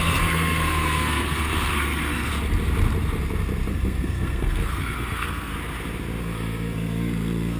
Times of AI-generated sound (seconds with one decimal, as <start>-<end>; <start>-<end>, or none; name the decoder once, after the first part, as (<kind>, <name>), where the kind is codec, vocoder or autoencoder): 0.0-2.3 (codec, SNAC); 3.7-5.5; 6.2-7.6